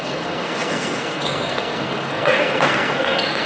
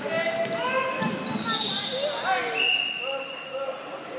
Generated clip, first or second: first